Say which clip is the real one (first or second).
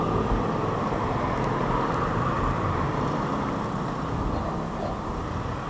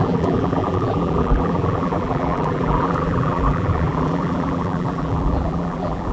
first